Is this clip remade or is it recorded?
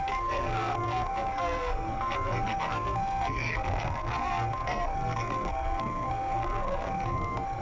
remade